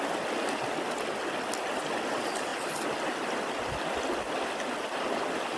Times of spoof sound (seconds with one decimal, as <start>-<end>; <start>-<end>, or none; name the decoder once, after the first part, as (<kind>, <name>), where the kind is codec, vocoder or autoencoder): none